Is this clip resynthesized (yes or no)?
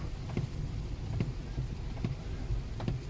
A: no